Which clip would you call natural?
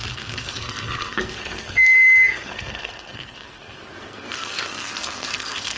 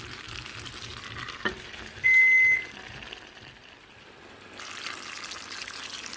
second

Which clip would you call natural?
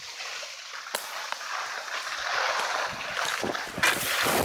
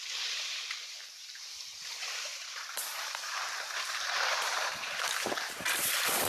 first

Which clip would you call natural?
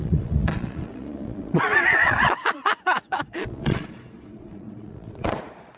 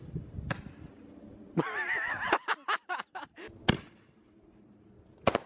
second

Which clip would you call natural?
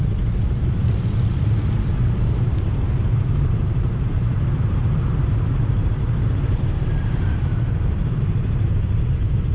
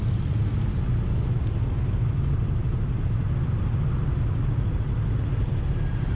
second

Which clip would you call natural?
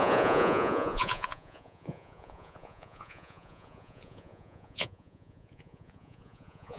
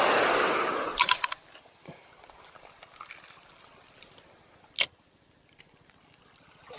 second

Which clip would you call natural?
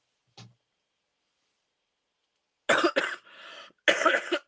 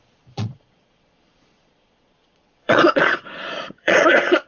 first